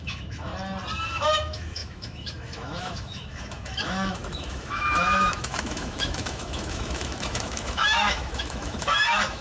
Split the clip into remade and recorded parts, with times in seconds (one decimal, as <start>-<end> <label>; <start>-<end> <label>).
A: 0.0-0.5 remade; 0.5-1.1 recorded; 1.1-9.4 remade